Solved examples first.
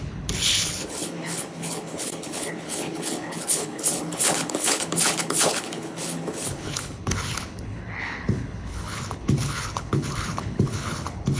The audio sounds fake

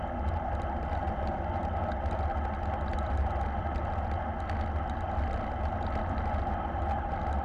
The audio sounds real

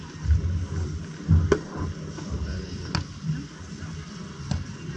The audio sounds real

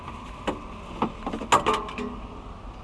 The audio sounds real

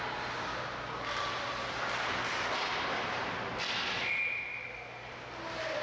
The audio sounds real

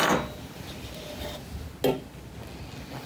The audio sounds real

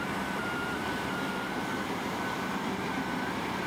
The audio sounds fake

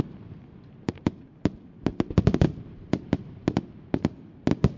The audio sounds real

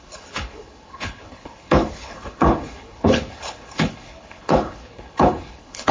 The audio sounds fake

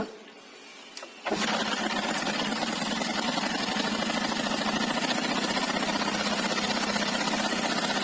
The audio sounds real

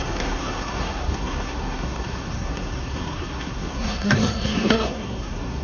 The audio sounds fake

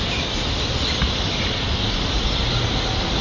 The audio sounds real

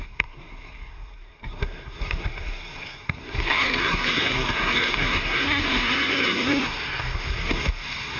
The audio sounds fake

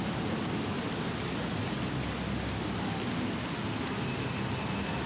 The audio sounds real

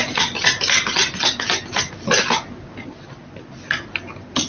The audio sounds real